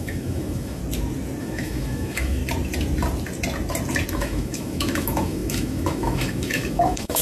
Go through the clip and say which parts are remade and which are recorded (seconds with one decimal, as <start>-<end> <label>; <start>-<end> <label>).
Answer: 0.0-0.8 remade; 0.8-1.4 recorded; 1.4-2.4 remade; 2.4-4.1 recorded; 4.1-7.2 remade